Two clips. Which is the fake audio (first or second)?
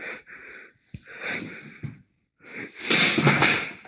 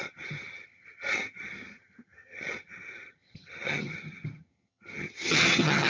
second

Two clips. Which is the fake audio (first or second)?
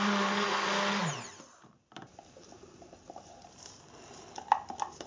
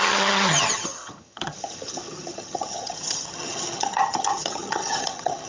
second